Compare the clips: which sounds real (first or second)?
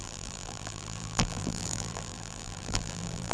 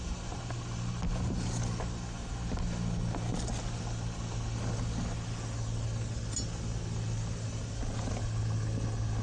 second